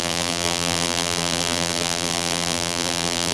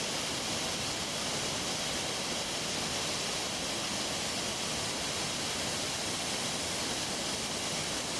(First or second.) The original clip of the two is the second